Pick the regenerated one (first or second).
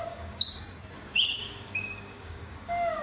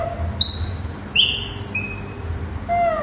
first